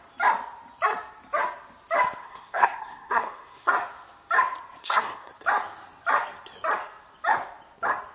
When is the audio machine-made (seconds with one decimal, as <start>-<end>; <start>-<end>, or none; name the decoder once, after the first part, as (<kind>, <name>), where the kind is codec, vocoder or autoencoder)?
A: 2.2-3.7 (codec, SNAC); 4.8-5.3